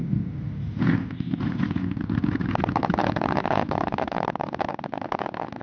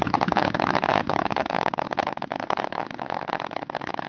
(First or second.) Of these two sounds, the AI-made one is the second